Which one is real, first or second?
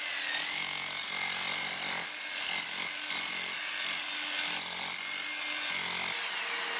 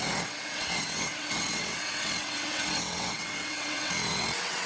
first